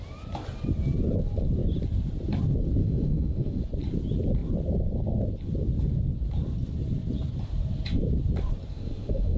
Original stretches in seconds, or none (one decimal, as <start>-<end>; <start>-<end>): 0.0-2.8; 3.6-8.7